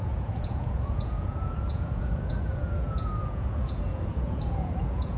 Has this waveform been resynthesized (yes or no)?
yes